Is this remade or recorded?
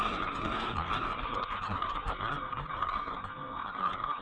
remade